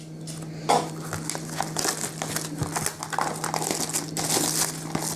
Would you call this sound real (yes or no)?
yes